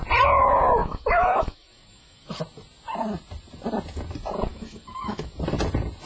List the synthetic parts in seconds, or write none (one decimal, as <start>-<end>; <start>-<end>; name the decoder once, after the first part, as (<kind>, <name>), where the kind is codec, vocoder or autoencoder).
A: 0.8-2.4 (autoencoder, DAC-VAE); 4.5-5.3